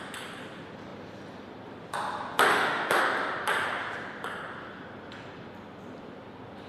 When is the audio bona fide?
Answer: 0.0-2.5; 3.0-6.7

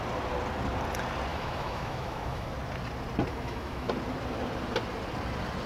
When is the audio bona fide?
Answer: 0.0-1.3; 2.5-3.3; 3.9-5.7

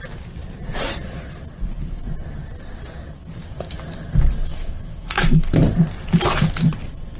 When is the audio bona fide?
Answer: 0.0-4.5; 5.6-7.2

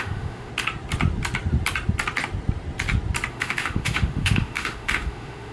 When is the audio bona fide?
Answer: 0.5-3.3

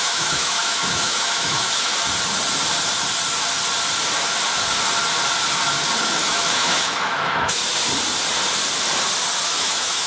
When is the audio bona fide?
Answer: 1.9-6.0; 7.6-9.6

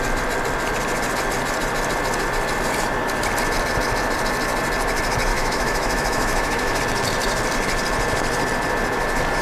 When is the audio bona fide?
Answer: 0.0-5.3; 6.8-9.4

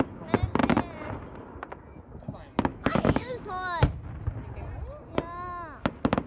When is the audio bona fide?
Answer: 0.0-2.7; 3.5-6.3

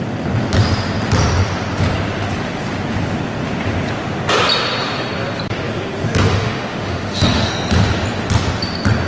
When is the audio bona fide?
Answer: 0.0-6.3; 7.5-9.1